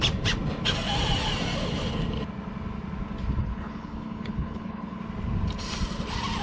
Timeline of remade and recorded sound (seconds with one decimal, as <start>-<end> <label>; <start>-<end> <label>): 0.0-3.4 recorded; 3.4-5.0 remade; 5.0-6.4 recorded